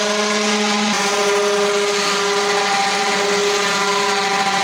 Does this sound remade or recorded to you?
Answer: recorded